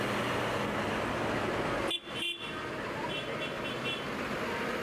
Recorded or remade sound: recorded